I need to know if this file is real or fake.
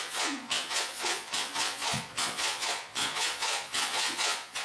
fake